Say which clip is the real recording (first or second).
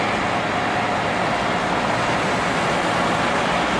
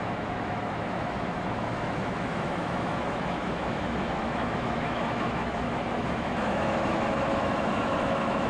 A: first